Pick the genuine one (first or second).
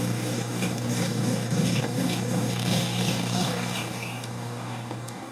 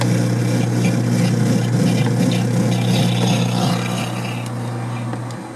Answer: second